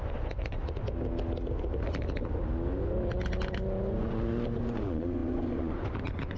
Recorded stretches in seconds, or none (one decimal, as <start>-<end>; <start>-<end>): 0.6-4.0